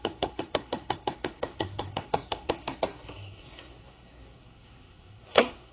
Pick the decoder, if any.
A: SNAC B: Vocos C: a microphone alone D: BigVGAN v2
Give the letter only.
A